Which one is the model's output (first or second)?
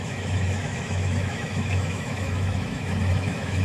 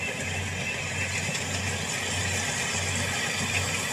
first